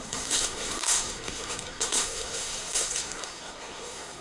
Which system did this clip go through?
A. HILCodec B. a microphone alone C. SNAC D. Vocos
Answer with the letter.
C